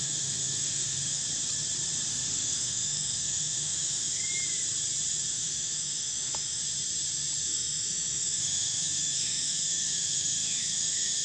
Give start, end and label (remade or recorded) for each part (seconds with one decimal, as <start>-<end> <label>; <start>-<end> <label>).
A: 0.0-1.2 remade; 1.2-2.1 recorded; 2.1-4.2 remade; 4.2-5.3 recorded; 5.3-6.6 remade; 6.6-7.4 recorded; 7.4-11.2 remade